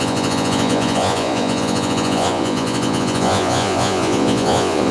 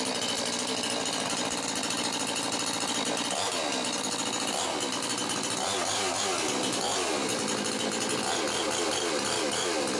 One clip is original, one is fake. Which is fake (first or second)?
first